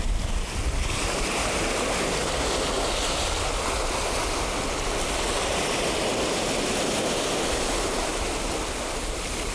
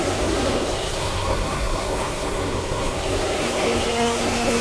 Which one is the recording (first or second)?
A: first